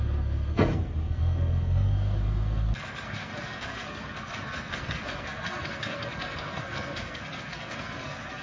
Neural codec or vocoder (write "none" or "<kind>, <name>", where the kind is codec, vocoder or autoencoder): codec, SNAC